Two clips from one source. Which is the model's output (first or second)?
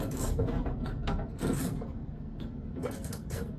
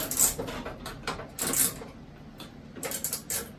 first